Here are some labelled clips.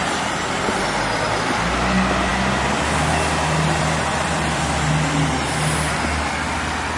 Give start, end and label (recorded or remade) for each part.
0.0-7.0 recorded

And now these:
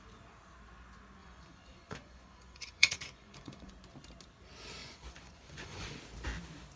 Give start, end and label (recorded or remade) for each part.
0.0-1.2 recorded; 1.2-3.7 remade; 3.7-4.8 recorded; 4.8-6.0 remade; 6.0-6.8 recorded

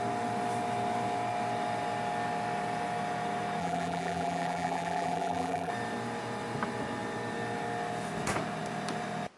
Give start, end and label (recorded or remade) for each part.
0.0-3.6 recorded; 3.6-5.7 remade; 5.7-9.4 recorded

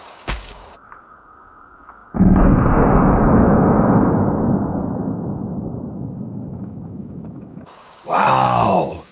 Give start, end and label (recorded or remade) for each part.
0.0-9.1 remade

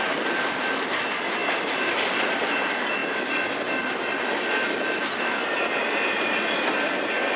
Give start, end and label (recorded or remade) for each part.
0.0-7.4 recorded

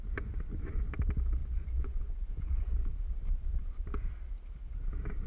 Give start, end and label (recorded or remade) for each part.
0.0-1.4 recorded; 1.4-2.9 remade; 2.9-5.3 recorded

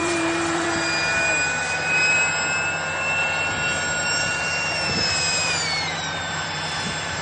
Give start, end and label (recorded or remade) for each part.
0.0-0.7 remade; 0.7-4.0 recorded; 4.0-7.2 remade

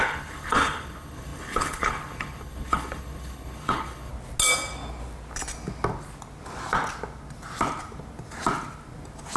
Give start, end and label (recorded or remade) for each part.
0.0-4.1 remade; 4.1-9.4 recorded